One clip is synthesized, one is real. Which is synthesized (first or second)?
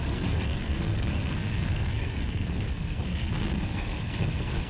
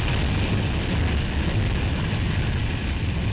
first